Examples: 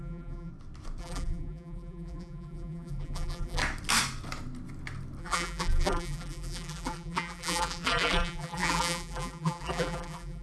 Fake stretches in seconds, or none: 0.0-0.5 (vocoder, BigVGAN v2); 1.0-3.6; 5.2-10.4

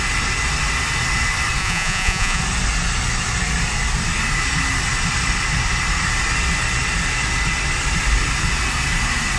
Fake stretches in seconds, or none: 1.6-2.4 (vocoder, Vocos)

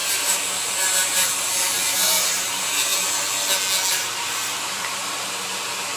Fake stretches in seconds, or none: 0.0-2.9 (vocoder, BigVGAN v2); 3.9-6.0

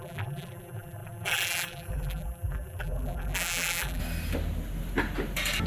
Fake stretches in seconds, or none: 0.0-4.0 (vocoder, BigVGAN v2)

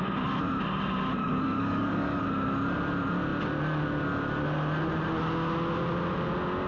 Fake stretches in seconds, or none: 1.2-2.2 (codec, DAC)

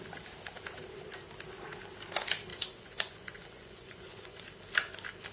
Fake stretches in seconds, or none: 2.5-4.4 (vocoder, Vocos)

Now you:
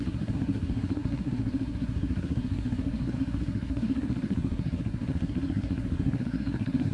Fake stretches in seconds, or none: 0.0-6.9 (codec, SNAC)

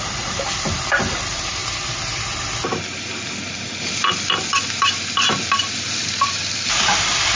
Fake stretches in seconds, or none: 0.0-1.6 (vocoder, BigVGAN v2); 6.0-7.4